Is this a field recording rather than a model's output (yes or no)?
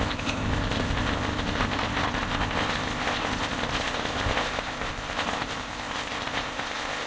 no